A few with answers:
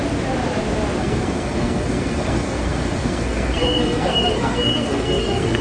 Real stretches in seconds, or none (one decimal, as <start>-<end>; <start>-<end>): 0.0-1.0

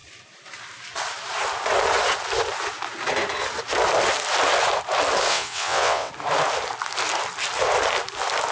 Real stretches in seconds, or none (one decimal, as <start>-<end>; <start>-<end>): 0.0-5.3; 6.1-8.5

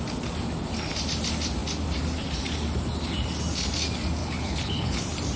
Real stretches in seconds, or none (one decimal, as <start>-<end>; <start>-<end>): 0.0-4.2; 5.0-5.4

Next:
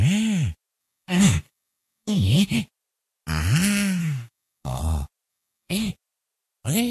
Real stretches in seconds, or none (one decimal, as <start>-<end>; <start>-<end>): 0.0-0.8; 2.6-4.0; 4.8-5.3; 5.9-6.9